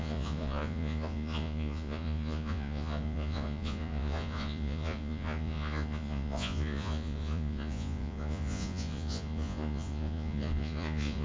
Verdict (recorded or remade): remade